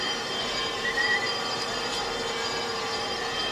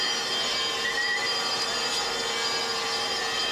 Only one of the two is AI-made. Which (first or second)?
first